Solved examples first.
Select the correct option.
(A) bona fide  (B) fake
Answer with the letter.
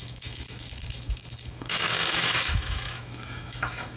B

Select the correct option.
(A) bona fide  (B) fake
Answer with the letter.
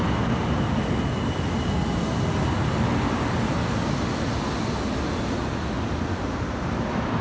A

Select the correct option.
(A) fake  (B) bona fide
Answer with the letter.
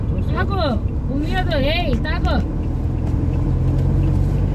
B